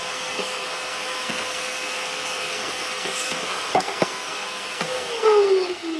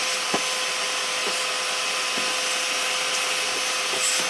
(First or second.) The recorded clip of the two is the second